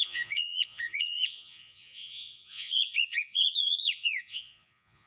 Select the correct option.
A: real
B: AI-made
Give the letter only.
B